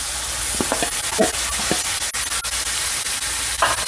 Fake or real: real